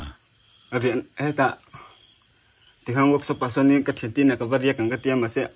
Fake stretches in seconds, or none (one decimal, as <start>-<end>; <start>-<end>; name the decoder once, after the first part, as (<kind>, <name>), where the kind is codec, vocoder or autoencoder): none